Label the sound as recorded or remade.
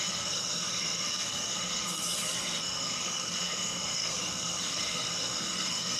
remade